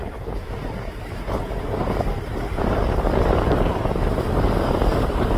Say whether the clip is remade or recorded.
remade